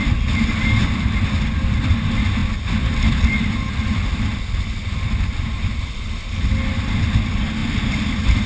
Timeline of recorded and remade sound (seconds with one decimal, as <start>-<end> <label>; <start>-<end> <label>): 0.0-8.5 recorded